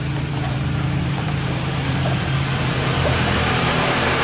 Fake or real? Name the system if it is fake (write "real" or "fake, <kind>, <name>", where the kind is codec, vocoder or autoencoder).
fake, vocoder, BigVGAN v2